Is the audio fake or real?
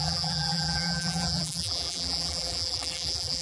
fake